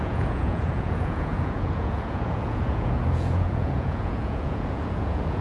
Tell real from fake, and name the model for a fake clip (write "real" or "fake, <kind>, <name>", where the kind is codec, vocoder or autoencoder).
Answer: fake, vocoder, Vocos